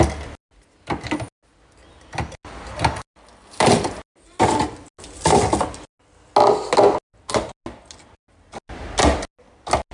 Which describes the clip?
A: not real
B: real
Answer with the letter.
B